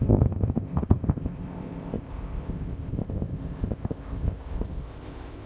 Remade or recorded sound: remade